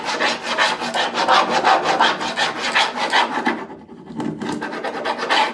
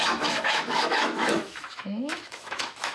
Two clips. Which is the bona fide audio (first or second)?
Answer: first